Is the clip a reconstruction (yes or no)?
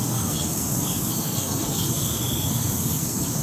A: yes